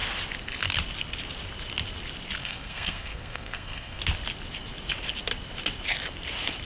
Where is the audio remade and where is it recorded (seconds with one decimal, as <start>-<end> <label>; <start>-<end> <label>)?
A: 0.0-2.4 recorded; 2.4-4.0 remade; 4.0-6.6 recorded